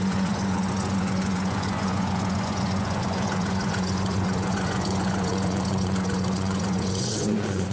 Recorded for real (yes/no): no